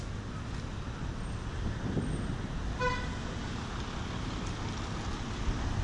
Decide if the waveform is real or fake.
real